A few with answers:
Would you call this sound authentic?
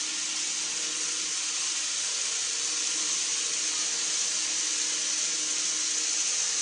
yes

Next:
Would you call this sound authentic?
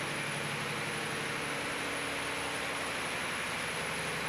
yes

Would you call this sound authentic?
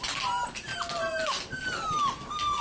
yes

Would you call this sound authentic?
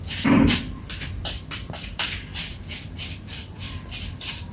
no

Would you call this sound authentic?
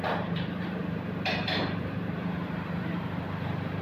no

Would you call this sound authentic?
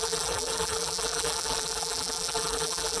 no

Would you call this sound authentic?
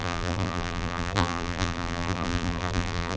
no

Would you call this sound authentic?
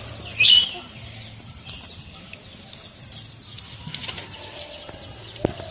yes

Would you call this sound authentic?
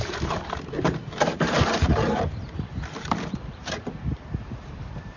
no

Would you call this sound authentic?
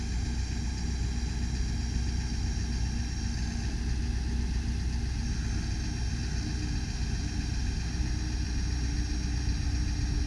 yes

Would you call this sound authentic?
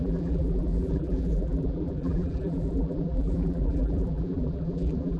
no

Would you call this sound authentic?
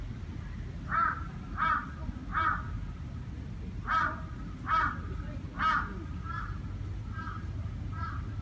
yes